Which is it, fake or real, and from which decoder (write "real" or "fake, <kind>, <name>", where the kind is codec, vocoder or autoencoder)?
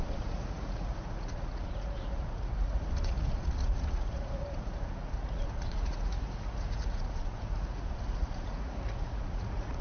fake, vocoder, Vocos